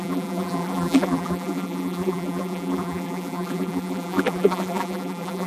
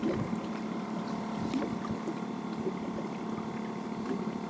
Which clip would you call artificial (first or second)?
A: first